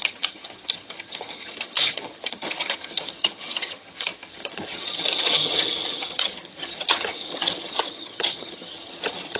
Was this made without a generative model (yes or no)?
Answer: no